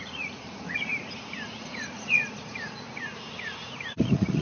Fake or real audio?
fake